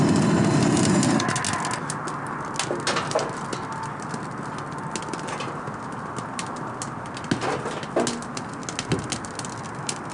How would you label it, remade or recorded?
recorded